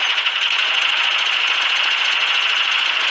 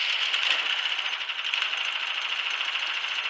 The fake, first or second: first